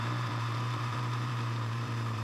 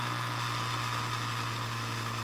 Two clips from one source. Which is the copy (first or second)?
first